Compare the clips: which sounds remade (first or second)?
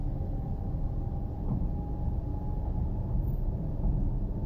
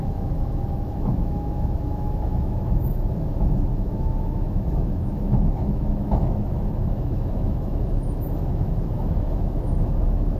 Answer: second